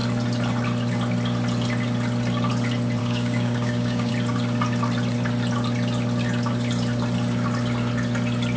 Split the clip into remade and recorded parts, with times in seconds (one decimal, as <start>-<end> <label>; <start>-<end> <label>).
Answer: 0.0-3.0 recorded; 3.0-4.1 remade; 4.1-8.6 recorded